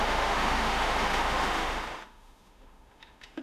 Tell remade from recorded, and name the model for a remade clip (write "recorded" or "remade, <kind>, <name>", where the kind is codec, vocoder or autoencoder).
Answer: remade, autoencoder, DAC-VAE